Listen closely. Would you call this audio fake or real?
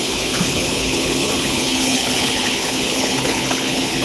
fake